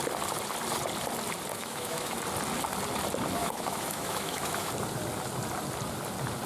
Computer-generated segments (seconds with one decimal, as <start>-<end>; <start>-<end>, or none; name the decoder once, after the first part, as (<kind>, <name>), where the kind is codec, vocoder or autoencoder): 1.5-2.2 (autoencoder, DAC-VAE); 3.4-4.7